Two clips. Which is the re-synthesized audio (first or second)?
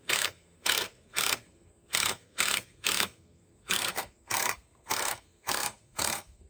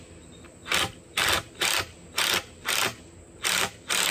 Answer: first